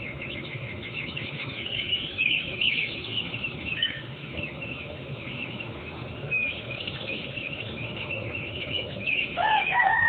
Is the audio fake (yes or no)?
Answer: yes